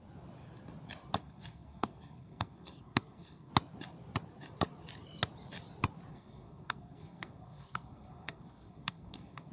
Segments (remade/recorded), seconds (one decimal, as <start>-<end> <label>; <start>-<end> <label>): 0.0-1.2 recorded; 1.2-3.5 remade; 3.5-6.1 recorded; 6.1-9.5 remade